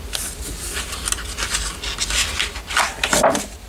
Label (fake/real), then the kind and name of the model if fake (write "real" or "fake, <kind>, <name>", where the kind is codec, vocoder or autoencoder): real